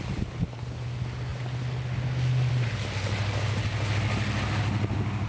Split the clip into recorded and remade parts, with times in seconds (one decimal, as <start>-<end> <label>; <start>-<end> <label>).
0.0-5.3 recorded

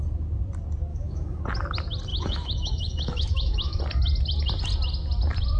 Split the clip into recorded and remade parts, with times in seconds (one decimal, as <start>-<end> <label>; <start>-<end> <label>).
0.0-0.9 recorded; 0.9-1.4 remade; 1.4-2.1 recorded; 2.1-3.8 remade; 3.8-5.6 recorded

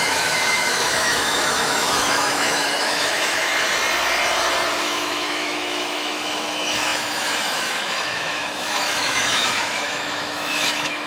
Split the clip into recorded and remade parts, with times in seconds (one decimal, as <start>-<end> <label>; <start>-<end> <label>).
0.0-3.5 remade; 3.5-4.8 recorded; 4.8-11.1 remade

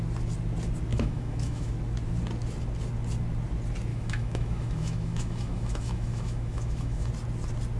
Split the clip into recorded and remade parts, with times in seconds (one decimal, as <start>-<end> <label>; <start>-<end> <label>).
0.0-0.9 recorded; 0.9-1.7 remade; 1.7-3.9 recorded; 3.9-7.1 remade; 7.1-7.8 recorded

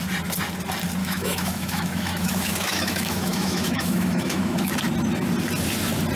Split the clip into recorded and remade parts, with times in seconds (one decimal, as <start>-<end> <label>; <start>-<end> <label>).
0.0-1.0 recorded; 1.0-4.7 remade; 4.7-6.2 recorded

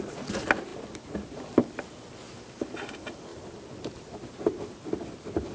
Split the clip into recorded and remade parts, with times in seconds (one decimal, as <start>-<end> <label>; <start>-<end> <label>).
0.0-5.5 recorded

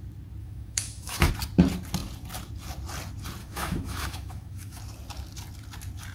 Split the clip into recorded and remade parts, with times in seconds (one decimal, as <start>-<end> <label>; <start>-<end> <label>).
0.0-0.4 recorded; 0.4-1.3 remade; 1.3-3.4 recorded; 3.4-4.8 remade; 4.8-6.1 recorded